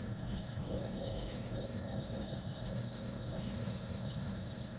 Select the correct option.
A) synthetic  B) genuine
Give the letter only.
A